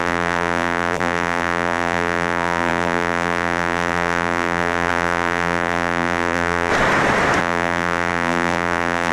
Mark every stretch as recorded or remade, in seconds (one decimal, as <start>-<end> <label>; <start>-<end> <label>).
0.0-6.7 remade; 6.7-7.4 recorded; 7.4-9.1 remade